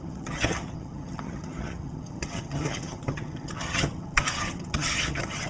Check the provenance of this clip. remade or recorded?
remade